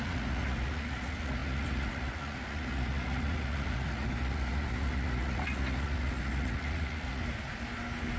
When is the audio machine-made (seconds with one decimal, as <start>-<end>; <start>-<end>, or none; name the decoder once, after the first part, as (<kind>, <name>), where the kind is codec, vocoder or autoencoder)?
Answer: 0.0-7.2 (vocoder, Vocos)